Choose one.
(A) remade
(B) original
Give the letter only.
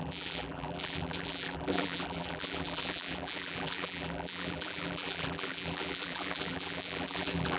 A